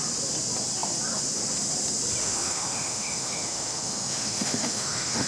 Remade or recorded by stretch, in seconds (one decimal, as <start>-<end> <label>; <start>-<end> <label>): 0.0-2.2 recorded; 2.2-5.3 remade